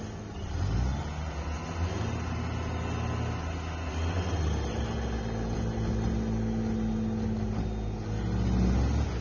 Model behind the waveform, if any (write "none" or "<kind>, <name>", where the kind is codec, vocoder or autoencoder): none